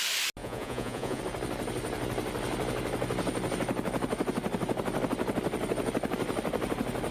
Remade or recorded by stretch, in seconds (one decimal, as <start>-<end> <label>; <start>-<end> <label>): 0.0-0.4 recorded; 0.4-1.2 remade; 1.2-7.1 recorded